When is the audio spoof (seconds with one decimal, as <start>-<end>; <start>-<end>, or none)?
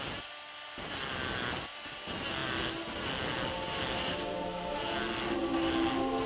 none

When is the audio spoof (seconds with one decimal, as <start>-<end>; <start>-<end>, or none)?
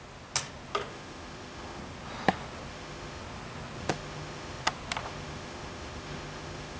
0.9-1.8; 2.7-3.2; 3.8-4.6; 5.0-6.8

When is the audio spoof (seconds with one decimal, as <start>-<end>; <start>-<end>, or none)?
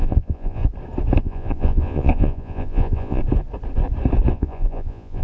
0.0-0.6; 1.2-3.2; 4.3-5.2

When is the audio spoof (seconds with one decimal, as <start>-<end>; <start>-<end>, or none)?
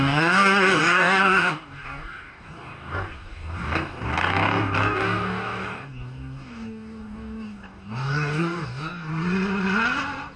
0.0-9.1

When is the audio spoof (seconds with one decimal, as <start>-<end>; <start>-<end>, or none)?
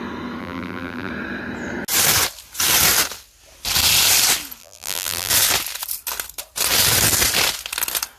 0.4-1.1; 4.6-5.3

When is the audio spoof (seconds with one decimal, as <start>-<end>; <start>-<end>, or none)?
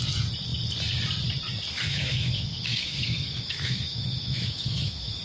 1.9-5.2